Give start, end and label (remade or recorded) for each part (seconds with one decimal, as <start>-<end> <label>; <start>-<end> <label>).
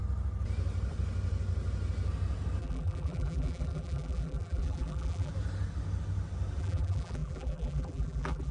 0.0-2.6 recorded; 2.6-5.3 remade; 5.3-6.6 recorded; 6.6-8.5 remade